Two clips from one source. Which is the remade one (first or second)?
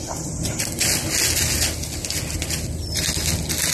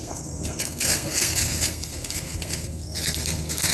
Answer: second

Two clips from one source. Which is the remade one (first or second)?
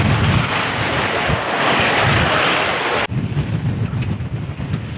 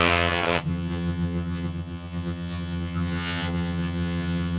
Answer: second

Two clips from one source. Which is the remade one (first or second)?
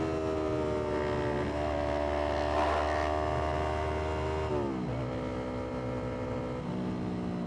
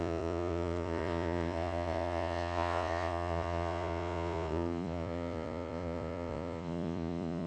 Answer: second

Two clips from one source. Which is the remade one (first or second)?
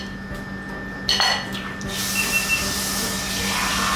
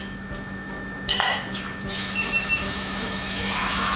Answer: second